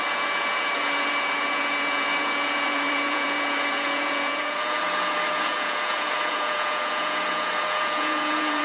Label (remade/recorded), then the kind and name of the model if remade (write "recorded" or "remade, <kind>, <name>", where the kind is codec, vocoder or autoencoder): remade, vocoder, Vocos